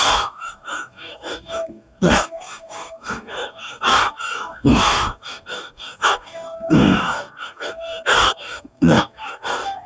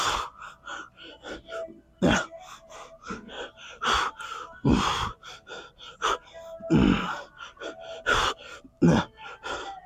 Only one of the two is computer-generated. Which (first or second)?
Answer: first